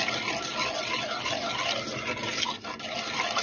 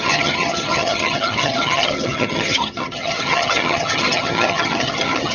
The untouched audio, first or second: first